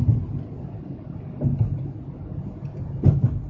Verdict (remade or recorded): recorded